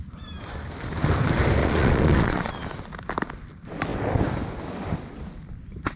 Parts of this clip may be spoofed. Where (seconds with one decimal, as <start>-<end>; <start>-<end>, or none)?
1.6-2.5

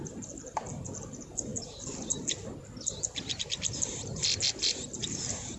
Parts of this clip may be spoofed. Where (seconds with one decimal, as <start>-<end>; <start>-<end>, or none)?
none